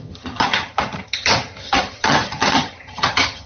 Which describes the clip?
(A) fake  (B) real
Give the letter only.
A